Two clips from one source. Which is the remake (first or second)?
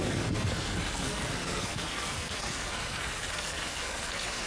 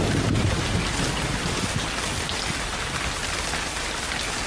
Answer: first